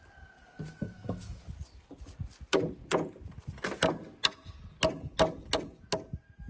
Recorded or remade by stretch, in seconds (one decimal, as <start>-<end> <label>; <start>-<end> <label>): 0.0-0.7 recorded; 0.7-1.4 remade; 1.4-6.5 recorded